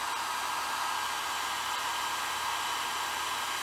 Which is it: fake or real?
fake